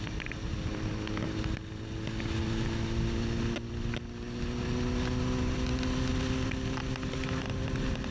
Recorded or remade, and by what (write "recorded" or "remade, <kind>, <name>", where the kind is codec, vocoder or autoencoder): recorded